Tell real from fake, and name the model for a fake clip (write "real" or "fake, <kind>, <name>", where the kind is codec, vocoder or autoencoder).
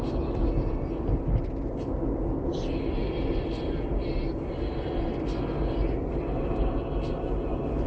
real